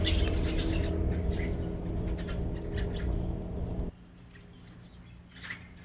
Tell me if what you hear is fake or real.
real